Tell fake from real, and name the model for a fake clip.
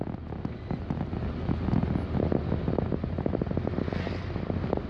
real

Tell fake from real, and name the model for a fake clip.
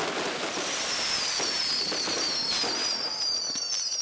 fake, vocoder, BigVGAN v2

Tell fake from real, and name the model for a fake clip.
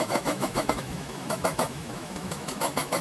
fake, autoencoder, DAC-VAE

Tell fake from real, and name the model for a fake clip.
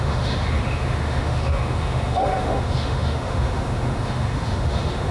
fake, autoencoder, DAC-VAE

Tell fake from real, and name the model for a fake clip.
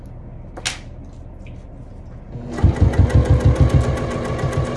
real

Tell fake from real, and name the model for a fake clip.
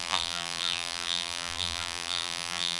fake, vocoder, BigVGAN v2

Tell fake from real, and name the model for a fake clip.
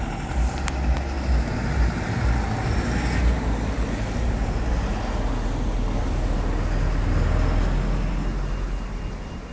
real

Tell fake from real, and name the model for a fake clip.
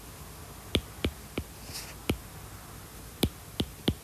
real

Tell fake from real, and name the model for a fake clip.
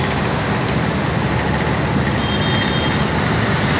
real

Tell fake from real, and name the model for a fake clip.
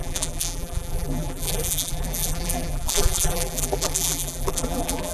fake, vocoder, BigVGAN v2